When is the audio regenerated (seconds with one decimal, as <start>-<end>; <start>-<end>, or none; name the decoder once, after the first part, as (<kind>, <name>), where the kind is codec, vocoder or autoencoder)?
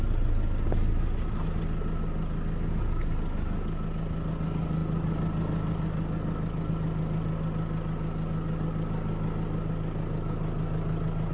none